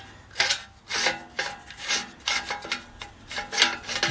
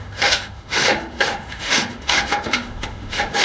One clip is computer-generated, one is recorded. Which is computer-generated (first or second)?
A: second